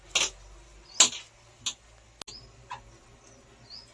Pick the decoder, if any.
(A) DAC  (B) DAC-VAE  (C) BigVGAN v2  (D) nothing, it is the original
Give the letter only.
D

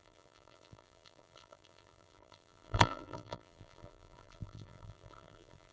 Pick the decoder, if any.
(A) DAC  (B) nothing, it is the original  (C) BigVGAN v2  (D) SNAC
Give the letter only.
C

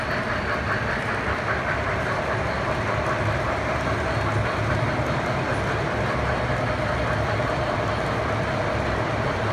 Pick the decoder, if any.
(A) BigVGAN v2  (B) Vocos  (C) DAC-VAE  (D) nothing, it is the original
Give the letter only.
D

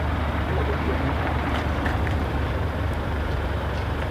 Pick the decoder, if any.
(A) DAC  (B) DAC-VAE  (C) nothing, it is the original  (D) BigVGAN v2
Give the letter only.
D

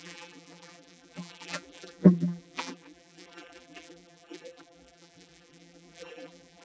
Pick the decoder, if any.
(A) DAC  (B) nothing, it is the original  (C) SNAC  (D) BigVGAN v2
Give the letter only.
D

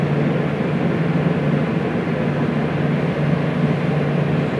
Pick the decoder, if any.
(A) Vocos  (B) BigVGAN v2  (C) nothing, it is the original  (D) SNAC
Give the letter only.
C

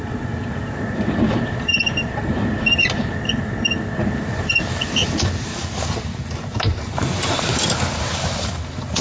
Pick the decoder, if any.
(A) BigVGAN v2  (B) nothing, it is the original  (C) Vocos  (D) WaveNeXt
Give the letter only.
A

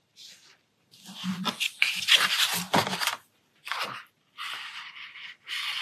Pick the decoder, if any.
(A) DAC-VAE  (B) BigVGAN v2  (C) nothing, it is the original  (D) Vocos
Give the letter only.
B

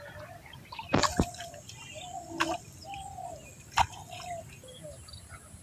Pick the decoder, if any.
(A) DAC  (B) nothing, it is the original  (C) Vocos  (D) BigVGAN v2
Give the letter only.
D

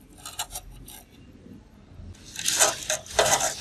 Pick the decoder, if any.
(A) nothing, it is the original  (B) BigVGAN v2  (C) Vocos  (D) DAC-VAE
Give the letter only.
A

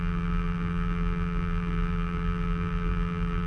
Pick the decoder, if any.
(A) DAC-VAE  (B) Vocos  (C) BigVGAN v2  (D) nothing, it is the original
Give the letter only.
C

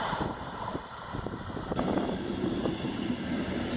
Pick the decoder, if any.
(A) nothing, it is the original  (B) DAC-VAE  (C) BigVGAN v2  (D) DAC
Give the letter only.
C